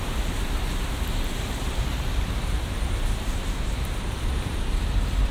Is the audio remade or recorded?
remade